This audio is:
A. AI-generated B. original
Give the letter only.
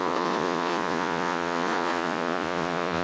A